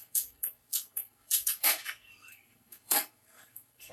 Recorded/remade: remade